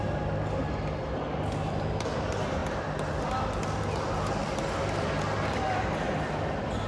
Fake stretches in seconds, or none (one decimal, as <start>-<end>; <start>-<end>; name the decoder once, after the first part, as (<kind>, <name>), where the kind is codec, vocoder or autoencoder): none